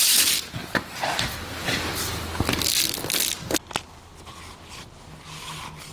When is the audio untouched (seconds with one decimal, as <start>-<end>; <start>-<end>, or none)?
0.0-0.6; 1.3-5.9